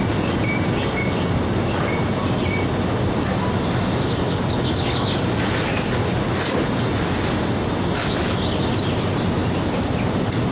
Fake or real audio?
real